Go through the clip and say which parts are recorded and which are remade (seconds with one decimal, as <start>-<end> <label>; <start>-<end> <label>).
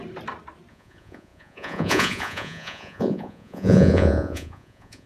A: 0.0-0.7 recorded; 0.7-5.1 remade